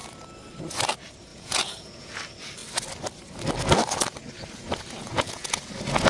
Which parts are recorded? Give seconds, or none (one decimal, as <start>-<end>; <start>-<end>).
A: 0.0-1.3; 2.2-5.0; 5.6-6.1